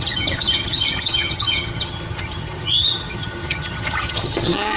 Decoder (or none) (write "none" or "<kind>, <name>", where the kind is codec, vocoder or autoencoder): vocoder, HiFi-GAN